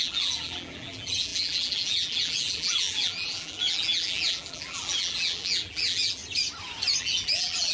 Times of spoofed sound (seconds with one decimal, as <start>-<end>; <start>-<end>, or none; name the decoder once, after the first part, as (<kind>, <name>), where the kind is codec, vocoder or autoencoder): 0.0-6.2 (vocoder, BigVGAN v2); 7.0-7.7